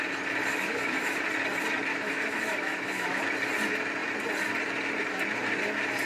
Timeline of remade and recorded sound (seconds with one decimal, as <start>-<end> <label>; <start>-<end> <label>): 0.0-0.5 recorded; 0.5-1.2 remade; 1.2-1.9 recorded; 1.9-3.2 remade; 3.2-6.1 recorded